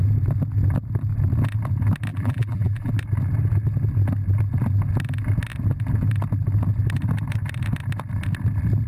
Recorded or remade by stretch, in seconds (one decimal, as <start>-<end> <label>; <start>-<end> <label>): 0.0-2.1 recorded; 2.1-2.9 remade; 2.9-8.9 recorded